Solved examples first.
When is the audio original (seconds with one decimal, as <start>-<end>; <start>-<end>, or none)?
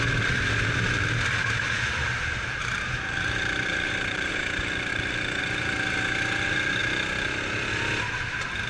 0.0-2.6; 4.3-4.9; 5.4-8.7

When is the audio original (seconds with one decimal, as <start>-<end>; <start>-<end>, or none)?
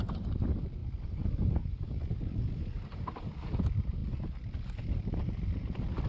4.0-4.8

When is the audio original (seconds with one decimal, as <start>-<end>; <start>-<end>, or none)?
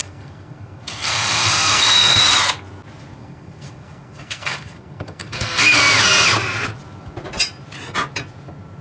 2.2-3.2; 5.8-8.8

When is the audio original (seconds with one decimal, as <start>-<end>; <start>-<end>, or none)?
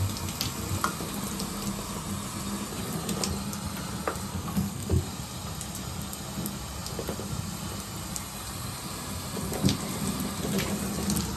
0.0-4.3; 5.0-11.4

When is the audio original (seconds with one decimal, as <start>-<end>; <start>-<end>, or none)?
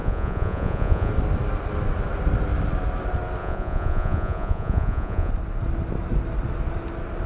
1.1-3.4; 5.3-7.3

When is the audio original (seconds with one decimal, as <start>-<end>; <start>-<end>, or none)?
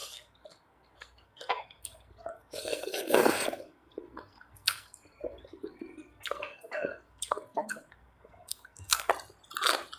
9.1-10.0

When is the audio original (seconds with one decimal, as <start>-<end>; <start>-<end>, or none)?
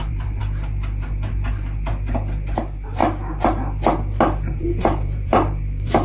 0.4-2.6; 3.0-4.6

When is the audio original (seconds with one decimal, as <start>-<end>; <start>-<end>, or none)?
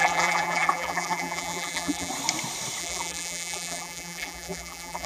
2.1-2.8